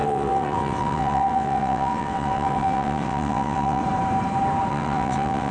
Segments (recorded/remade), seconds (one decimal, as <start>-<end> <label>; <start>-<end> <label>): 0.0-3.8 remade; 3.8-4.7 recorded; 4.7-5.5 remade